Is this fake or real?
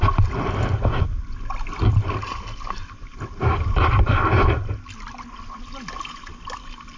real